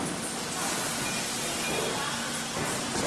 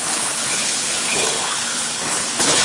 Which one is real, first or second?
first